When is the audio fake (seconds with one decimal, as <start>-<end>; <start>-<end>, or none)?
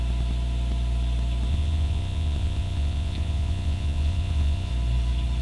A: 1.5-4.7